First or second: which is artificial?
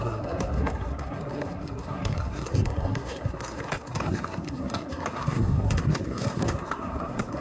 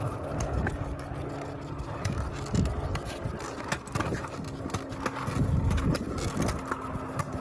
first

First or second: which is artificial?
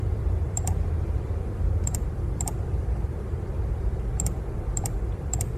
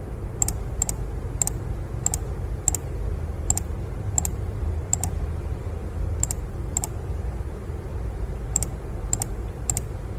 first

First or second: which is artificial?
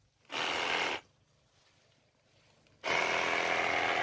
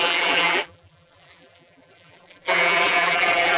second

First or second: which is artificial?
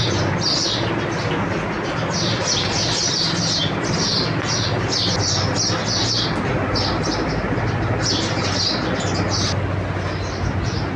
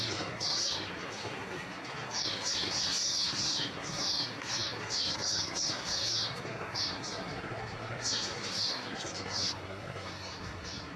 second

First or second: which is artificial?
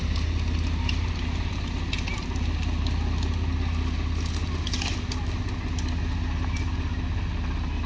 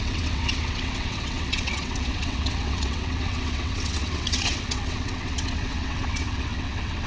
second